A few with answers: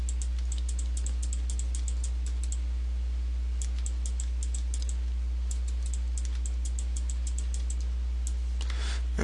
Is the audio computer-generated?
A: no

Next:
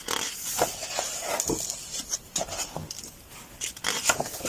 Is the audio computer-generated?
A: no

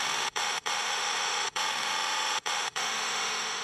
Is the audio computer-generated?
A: yes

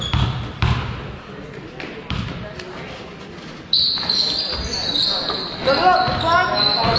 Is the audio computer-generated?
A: no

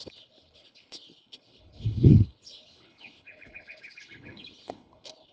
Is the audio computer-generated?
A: yes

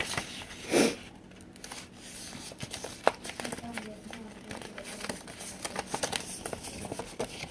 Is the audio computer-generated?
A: no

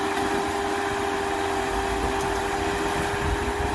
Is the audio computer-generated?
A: no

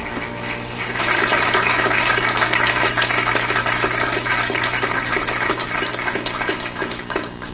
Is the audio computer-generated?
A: yes